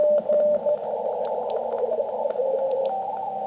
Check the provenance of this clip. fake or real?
real